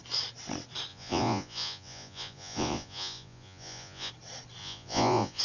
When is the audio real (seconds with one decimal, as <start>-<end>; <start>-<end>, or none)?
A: 0.0-0.9; 4.1-4.6